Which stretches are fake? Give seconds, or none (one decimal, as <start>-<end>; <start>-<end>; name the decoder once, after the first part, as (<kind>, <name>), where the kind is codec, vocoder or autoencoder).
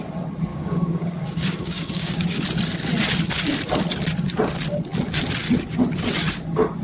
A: 0.5-2.4 (codec, DAC)